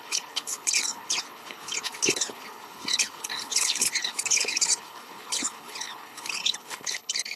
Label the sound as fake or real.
fake